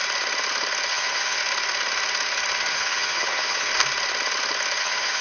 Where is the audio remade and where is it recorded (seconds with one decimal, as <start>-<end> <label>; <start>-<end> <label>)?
0.0-0.9 recorded; 0.9-1.4 remade; 1.4-2.7 recorded; 2.7-3.7 remade; 3.7-4.8 recorded; 4.8-5.2 remade